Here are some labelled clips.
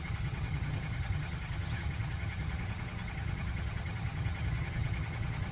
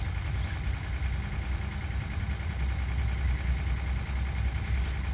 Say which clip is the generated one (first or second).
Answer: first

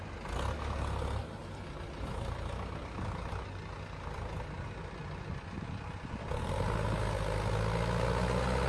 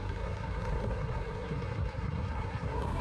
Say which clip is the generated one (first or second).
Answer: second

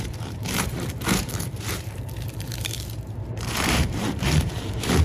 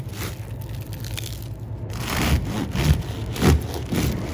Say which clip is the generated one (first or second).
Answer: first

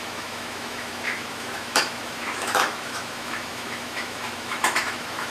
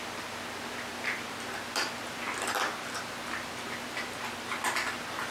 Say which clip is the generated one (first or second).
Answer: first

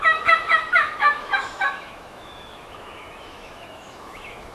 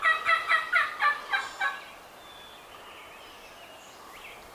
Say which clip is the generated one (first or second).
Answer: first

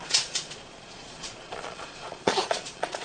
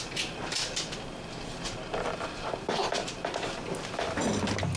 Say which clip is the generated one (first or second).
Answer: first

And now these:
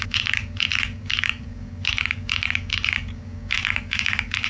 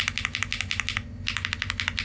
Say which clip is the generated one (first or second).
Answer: first